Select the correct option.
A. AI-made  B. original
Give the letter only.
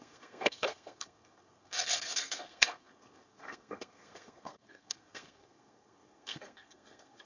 A